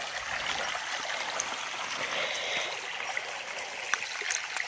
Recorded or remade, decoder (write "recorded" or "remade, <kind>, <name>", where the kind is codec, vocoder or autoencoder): recorded